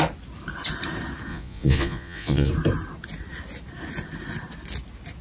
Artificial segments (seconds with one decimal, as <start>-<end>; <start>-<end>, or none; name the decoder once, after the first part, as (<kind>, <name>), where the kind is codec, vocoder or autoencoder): 1.3-2.5 (vocoder, Vocos)